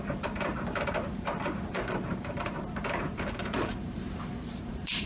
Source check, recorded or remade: remade